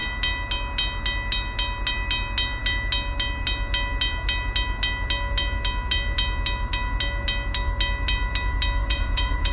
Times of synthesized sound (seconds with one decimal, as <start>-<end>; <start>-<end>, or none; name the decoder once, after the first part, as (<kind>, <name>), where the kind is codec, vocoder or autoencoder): 8.8-9.5 (vocoder, Vocos)